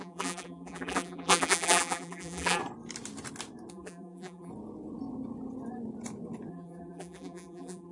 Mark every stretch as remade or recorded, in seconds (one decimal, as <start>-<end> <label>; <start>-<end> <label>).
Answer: 0.0-2.6 remade; 2.6-3.7 recorded; 3.7-4.5 remade; 4.5-6.5 recorded; 6.5-7.9 remade